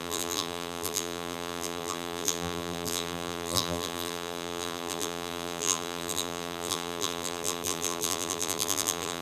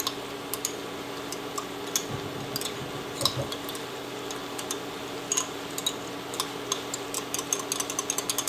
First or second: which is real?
second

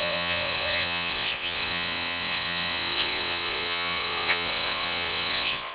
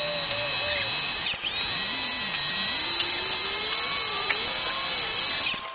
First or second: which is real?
second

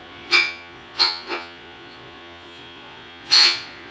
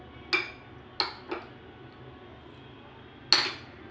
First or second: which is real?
second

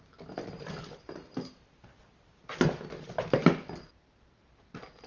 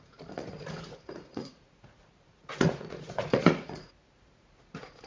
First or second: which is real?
first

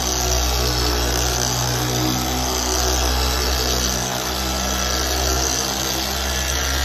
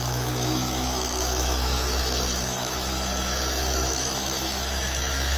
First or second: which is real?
first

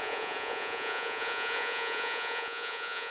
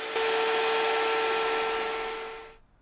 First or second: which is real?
second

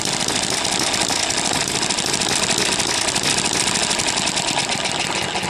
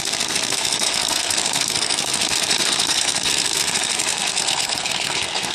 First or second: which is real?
first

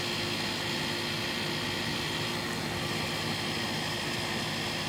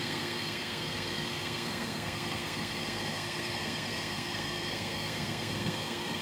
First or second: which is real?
first